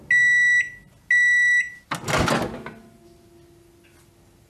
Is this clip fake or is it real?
real